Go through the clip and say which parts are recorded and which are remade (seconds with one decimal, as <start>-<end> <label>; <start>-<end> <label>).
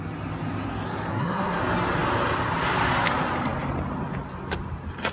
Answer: 0.0-1.1 recorded; 1.1-1.6 remade; 1.6-5.1 recorded